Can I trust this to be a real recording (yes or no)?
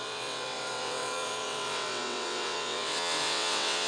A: no